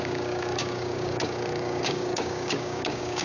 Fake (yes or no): yes